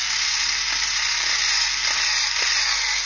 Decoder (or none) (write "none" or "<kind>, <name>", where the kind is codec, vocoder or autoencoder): none